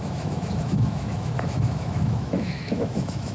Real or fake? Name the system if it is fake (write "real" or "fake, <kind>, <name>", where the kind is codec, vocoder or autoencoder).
fake, autoencoder, DAC-VAE